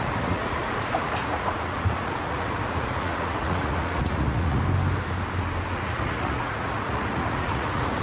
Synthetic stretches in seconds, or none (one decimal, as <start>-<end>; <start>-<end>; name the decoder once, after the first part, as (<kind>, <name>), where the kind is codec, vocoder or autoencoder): 0.0-4.6 (vocoder, Vocos); 5.7-8.0